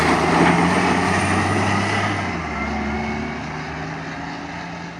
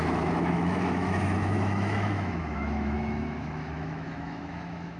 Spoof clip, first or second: second